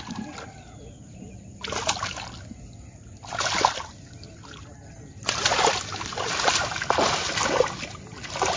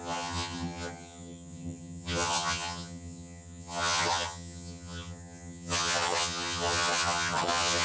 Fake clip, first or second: second